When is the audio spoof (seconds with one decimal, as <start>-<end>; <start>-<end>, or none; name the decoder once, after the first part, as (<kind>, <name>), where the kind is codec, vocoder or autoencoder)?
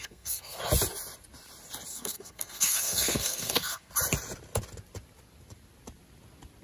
0.0-0.6 (codec, SNAC); 1.9-3.9